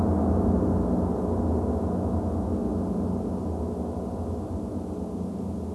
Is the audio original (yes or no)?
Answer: yes